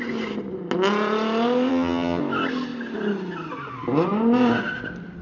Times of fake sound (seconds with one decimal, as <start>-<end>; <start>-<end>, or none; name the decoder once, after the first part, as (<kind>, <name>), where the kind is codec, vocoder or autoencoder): 1.7-2.2 (vocoder, HiFi-GAN)